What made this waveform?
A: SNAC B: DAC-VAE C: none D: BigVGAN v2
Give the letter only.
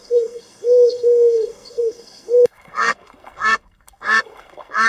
A